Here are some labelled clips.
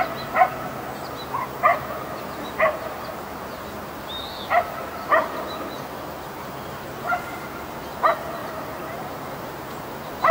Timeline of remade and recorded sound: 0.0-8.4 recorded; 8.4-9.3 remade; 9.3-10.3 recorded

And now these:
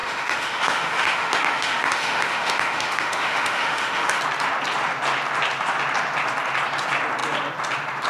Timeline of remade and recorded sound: 0.0-4.2 remade; 4.2-8.1 recorded

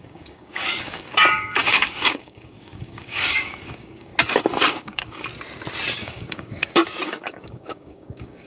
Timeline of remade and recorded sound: 0.0-4.1 remade; 4.1-4.7 recorded; 4.7-5.3 remade; 5.3-5.9 recorded; 5.9-8.5 remade